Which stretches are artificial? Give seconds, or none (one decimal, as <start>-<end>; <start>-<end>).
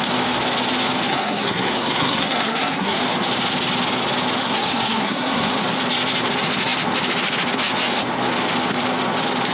1.1-3.0; 4.4-5.5